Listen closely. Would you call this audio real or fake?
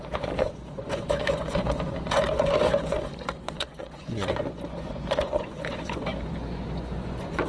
fake